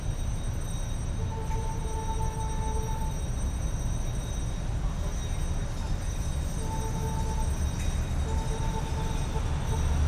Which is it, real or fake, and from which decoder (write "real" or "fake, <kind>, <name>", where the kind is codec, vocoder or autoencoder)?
real